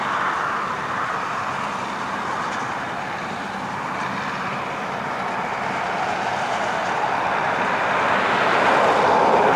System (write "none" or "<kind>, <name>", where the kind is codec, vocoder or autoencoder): none